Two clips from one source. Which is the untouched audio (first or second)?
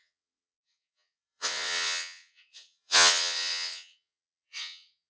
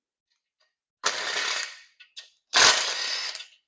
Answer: second